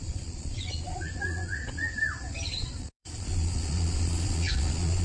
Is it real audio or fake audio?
fake